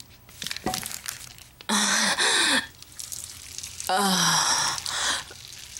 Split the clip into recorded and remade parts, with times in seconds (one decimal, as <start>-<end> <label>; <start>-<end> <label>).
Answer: 0.0-5.8 recorded